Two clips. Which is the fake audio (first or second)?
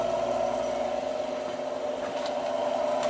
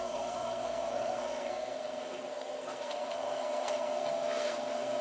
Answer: second